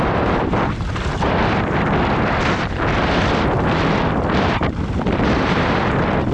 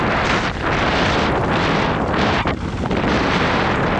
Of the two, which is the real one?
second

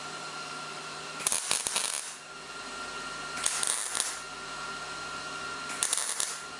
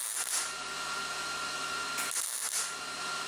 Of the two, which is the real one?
second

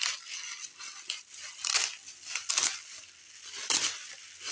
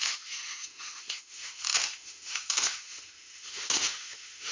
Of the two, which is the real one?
first